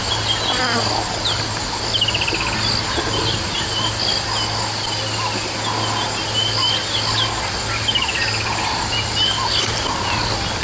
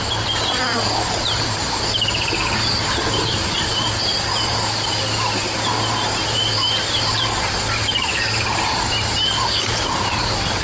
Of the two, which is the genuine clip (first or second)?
first